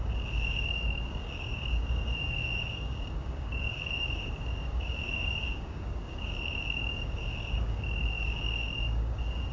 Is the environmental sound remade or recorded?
remade